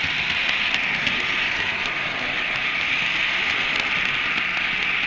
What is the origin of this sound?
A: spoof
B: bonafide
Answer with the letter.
B